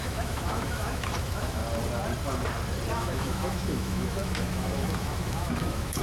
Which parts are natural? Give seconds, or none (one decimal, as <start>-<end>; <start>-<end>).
1.6-2.9